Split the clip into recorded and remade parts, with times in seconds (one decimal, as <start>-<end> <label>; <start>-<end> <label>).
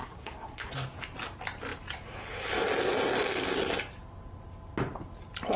0.0-0.7 remade; 0.7-5.6 recorded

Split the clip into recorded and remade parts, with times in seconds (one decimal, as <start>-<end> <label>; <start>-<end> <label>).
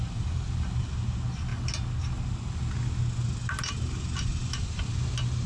0.0-5.5 recorded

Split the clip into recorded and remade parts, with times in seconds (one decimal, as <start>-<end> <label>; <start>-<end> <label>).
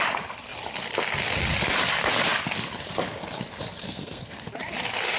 0.0-3.8 recorded; 3.8-4.5 remade; 4.5-5.2 recorded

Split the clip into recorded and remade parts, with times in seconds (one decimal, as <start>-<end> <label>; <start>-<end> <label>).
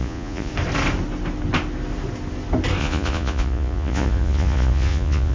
0.0-0.5 remade; 0.5-2.8 recorded; 2.8-5.3 remade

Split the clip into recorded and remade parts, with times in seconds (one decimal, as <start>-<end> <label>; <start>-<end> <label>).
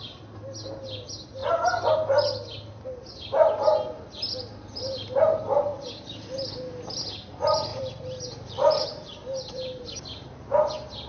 0.0-1.4 recorded; 1.4-1.9 remade; 1.9-5.7 recorded; 5.7-6.5 remade; 6.5-7.7 recorded; 7.7-10.3 remade; 10.3-11.1 recorded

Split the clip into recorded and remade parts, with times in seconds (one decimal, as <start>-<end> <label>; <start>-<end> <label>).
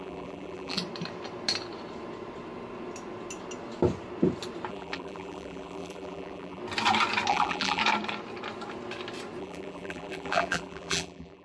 0.0-0.8 remade; 0.8-4.7 recorded; 4.7-6.6 remade; 6.6-7.3 recorded; 7.3-7.8 remade; 7.8-9.4 recorded; 9.4-11.4 remade